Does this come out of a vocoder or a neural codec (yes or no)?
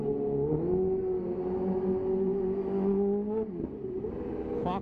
no